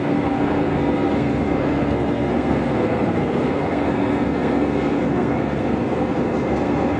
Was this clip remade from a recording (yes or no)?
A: yes